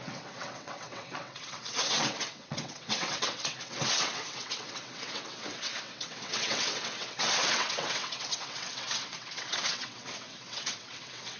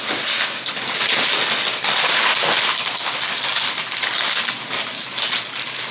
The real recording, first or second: second